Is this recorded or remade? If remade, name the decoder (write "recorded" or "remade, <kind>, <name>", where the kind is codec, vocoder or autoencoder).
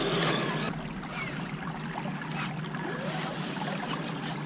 recorded